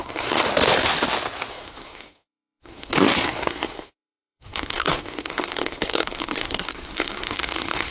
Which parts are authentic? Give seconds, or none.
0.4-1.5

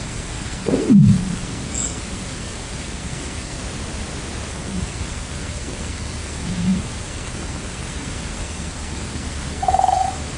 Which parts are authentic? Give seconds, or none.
3.6-4.5

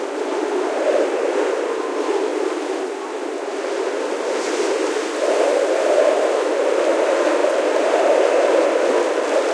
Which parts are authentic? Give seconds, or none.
0.0-9.5

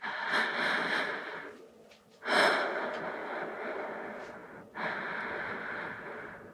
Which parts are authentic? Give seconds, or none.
0.0-6.5

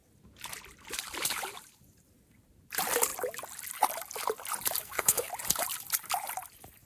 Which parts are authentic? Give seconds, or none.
0.0-4.8; 5.3-6.8

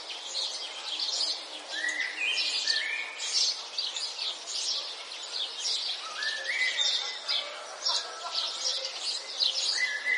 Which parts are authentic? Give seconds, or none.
0.0-10.2

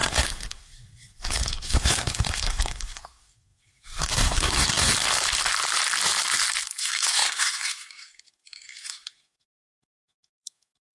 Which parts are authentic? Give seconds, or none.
4.9-6.8